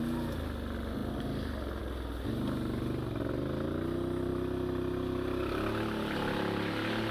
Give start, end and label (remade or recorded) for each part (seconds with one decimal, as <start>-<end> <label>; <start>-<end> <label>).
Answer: 0.0-7.1 recorded